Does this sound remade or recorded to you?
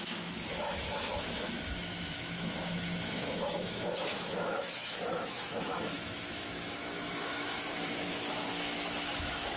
remade